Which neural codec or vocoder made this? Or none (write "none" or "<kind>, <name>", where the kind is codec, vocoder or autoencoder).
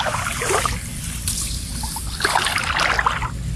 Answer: none